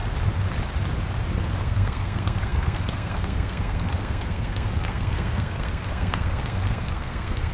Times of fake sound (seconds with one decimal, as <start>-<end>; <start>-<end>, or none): 1.6-7.5